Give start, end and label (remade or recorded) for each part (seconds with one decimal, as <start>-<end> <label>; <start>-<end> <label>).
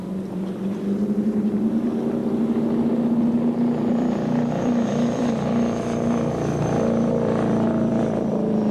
0.0-2.2 remade; 2.2-3.9 recorded; 3.9-8.7 remade